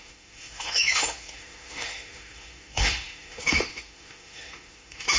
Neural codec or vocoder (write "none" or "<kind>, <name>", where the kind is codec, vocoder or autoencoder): autoencoder, DAC-VAE